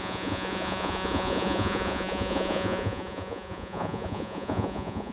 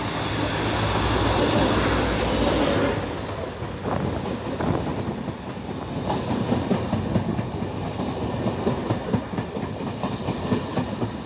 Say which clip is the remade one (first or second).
first